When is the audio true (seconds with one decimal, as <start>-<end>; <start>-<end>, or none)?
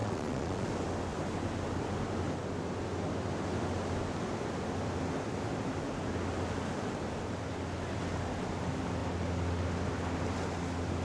0.7-11.0